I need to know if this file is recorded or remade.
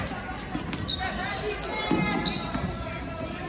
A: recorded